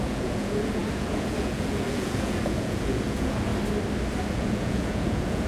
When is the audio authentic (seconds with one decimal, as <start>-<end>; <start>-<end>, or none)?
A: 3.5-4.3